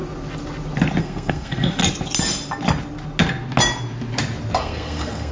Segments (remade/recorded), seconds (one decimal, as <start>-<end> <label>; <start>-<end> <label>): 0.0-1.0 recorded; 1.0-1.8 remade; 1.8-4.6 recorded; 4.6-5.3 remade

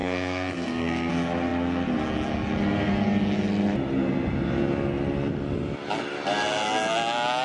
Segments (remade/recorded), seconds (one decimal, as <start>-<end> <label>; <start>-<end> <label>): 0.0-1.1 remade; 1.1-7.4 recorded